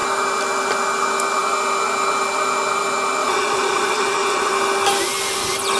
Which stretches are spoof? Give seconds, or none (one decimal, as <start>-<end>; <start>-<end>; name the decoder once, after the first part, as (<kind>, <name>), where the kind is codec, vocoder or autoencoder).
3.2-4.5 (vocoder, Vocos)